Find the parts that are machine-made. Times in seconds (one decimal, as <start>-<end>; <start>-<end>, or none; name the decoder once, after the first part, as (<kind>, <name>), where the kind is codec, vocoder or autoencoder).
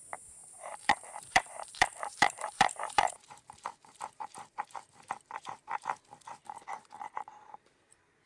0.4-5.1 (vocoder, BigVGAN v2); 6.4-7.9